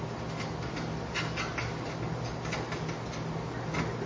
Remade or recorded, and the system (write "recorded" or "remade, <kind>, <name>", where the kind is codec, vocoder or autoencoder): recorded